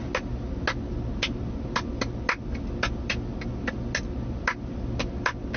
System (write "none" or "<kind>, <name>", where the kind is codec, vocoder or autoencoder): none